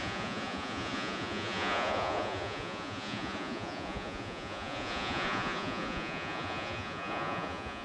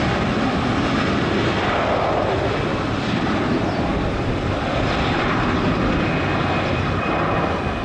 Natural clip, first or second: second